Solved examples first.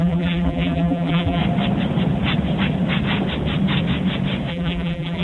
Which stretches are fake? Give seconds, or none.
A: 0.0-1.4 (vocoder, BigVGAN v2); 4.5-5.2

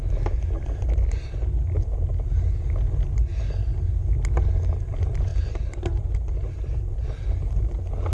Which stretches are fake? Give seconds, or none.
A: none

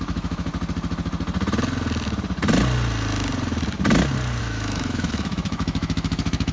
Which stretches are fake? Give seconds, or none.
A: 0.0-0.5 (autoencoder, DAC-VAE); 4.4-6.5

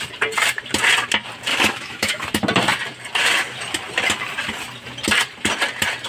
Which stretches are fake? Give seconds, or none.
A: 1.5-2.2 (autoencoder, DAC-VAE)